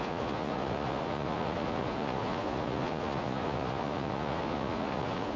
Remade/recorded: remade